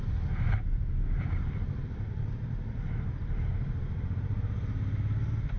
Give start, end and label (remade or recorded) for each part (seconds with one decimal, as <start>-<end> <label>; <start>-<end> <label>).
0.0-5.6 recorded